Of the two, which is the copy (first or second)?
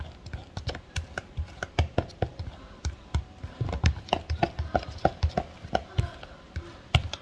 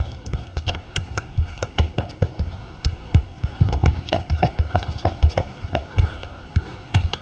second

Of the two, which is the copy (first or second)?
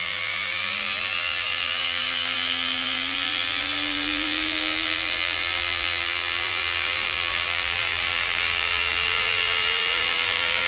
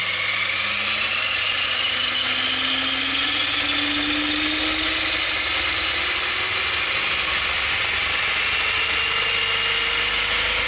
first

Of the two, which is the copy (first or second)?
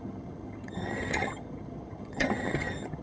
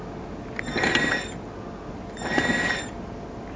first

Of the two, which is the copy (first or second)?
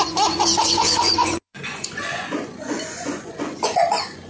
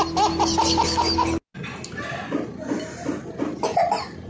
first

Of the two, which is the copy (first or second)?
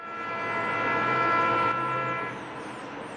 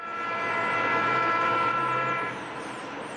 second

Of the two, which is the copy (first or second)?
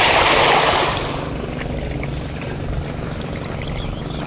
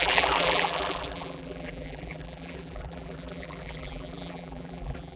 second